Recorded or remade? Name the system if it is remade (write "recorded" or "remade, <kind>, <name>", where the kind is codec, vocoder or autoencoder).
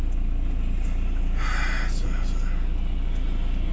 recorded